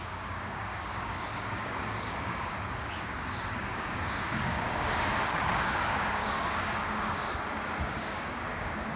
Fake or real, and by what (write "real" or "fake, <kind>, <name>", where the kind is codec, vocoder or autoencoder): fake, codec, DAC